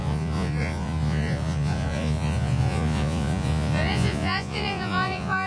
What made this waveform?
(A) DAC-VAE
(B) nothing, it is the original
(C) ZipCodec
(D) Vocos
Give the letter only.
D